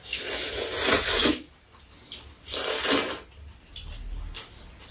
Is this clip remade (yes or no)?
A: no